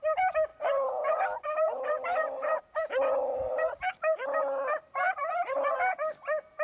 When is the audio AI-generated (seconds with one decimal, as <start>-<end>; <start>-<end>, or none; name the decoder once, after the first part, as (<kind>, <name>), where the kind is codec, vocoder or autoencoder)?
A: 0.5-2.6 (vocoder, BigVGAN v2); 5.0-5.5